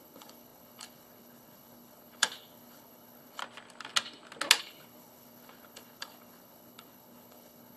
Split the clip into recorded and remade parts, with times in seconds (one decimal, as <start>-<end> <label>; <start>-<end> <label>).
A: 0.0-3.4 remade; 3.4-4.6 recorded; 4.6-7.8 remade